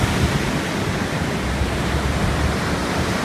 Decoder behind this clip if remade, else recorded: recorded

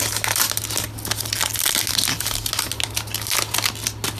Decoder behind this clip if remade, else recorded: recorded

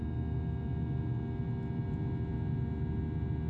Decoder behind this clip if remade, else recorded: recorded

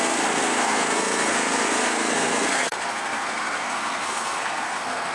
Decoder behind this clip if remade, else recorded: remade, codec, SNAC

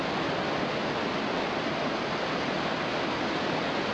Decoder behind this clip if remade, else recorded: recorded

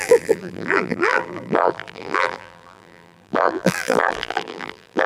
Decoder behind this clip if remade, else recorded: remade, vocoder, BigVGAN v2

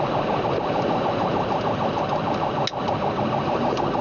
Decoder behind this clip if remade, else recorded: recorded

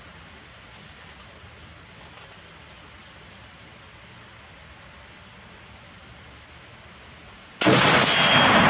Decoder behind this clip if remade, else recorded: recorded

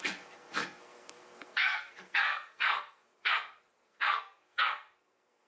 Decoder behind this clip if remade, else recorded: remade, codec, SNAC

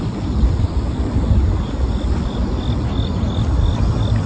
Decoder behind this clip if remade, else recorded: recorded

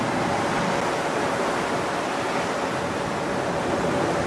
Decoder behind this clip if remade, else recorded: recorded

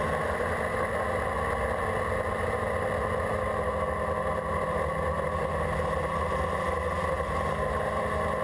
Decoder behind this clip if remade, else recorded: recorded